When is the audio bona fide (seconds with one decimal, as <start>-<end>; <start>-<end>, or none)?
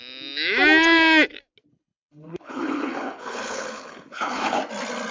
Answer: 0.0-1.7; 4.6-5.1